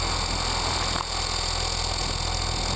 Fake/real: real